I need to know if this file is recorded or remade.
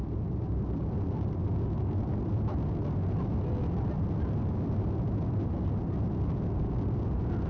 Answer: recorded